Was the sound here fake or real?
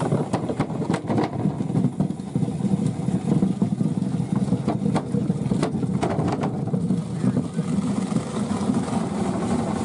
real